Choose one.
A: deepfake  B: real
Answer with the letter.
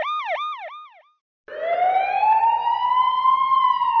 B